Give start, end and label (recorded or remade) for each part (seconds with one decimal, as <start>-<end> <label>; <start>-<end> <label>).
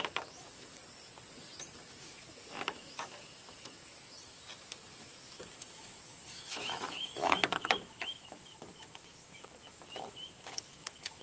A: 0.0-0.8 remade; 0.8-1.6 recorded; 1.6-11.2 remade